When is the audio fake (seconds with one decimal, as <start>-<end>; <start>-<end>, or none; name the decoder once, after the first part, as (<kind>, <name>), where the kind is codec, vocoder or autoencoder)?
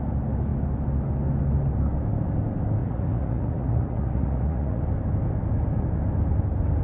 2.8-4.8 (vocoder, Vocos)